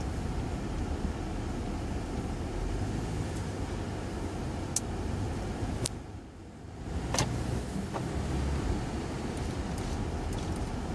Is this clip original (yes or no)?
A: yes